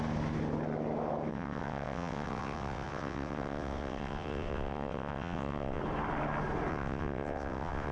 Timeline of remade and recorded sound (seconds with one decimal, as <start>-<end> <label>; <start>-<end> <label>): 0.0-1.3 recorded; 1.3-5.8 remade; 5.8-6.7 recorded; 6.7-7.9 remade